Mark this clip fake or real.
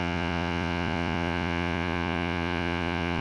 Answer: fake